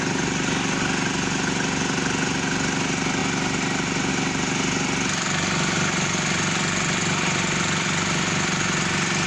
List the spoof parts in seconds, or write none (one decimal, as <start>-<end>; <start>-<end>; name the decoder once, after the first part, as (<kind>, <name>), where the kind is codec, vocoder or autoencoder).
none

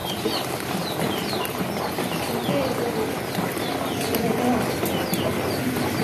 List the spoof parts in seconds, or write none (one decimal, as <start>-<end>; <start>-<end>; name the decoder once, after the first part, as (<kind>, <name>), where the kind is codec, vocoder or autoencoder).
none

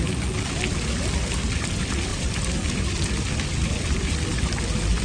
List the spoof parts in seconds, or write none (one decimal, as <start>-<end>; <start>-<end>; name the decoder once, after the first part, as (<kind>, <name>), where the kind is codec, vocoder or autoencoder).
none

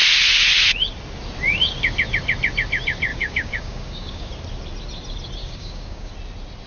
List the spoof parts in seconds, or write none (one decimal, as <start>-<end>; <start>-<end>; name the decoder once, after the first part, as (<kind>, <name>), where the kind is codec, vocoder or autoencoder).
3.1-4.3 (codec, DAC); 5.4-6.1

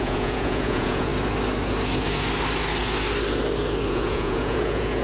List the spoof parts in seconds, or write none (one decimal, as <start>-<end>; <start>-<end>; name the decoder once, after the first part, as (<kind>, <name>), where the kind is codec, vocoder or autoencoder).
0.0-1.1 (vocoder, Vocos); 3.9-5.0

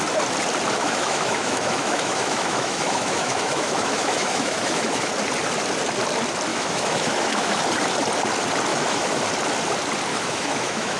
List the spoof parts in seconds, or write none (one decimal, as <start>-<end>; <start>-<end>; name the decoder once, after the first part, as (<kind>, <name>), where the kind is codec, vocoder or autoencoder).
0.8-5.1 (autoencoder, DAC-VAE); 6.5-7.6; 8.7-9.2; 10.1-11.0

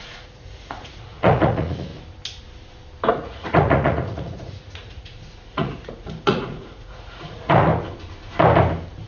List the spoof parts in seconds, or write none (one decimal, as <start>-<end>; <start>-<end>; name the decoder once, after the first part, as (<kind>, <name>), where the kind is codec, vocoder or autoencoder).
0.0-1.9 (vocoder, Vocos); 3.1-7.7

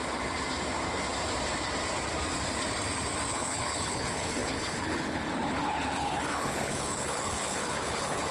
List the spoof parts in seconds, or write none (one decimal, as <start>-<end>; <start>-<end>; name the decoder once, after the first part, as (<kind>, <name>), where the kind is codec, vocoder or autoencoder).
3.3-8.3 (codec, HILCodec)